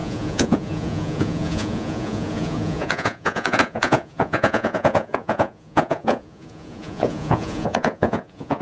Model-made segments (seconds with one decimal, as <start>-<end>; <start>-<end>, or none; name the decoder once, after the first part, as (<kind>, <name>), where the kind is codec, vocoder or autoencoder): 0.0-8.6 (vocoder, Vocos)